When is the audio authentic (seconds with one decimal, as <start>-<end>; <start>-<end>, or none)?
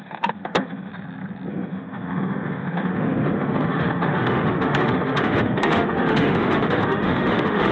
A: 0.9-1.5